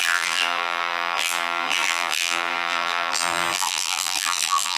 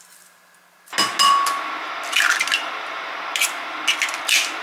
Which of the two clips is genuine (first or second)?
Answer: second